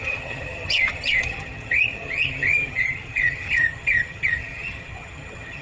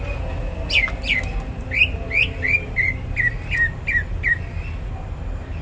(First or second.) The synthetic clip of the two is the first